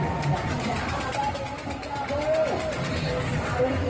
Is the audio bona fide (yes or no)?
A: yes